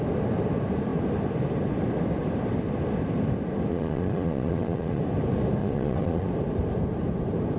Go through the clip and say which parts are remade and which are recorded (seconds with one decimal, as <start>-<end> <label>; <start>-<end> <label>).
0.0-3.7 recorded; 3.7-5.0 remade; 5.0-5.6 recorded; 5.6-6.3 remade; 6.3-7.6 recorded